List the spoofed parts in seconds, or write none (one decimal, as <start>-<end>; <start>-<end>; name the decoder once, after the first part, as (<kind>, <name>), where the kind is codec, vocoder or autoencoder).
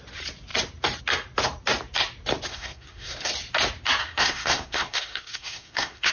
2.5-3.3 (codec, SNAC); 4.0-6.1